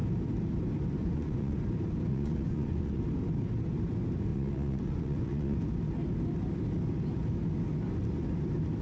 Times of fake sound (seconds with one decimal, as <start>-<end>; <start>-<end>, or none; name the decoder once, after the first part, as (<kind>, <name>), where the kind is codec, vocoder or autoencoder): 1.0-1.6 (vocoder, Vocos); 2.1-3.0; 4.3-5.6